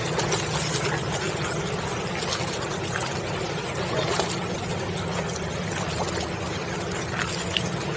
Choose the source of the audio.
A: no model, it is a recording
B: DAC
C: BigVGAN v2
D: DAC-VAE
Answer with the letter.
A